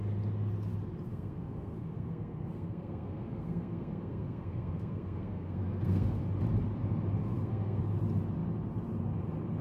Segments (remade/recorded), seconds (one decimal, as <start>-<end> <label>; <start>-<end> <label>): 0.0-1.1 recorded; 1.1-6.2 remade; 6.2-7.2 recorded; 7.2-7.8 remade; 7.8-9.6 recorded